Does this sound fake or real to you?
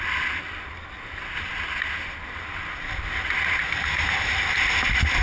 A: real